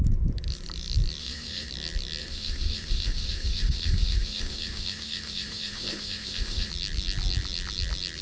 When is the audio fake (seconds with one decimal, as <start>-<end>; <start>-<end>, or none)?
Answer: 1.2-1.7; 2.2-6.7